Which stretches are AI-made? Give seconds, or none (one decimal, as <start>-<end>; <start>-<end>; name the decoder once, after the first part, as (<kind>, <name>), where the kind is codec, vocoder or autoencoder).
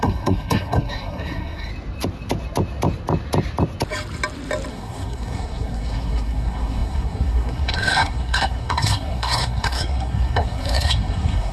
0.0-1.7 (codec, SNAC); 4.7-11.5